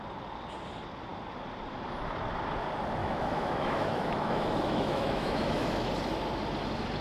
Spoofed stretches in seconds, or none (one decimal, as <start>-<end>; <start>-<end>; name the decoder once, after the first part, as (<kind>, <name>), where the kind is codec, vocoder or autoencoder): 3.0-5.9 (autoencoder, DAC-VAE)